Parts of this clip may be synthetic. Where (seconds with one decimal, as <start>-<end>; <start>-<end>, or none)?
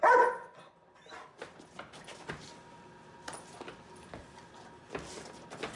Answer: 0.0-0.7